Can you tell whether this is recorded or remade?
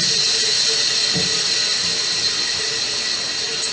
recorded